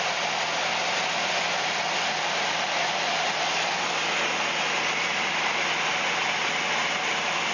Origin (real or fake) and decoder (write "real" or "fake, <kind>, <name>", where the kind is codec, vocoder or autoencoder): real